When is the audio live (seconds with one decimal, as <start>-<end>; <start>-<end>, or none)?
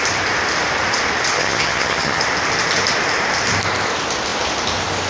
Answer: 0.0-1.3; 2.2-5.1